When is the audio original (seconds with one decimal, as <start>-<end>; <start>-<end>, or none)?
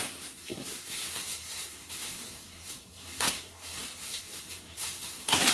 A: none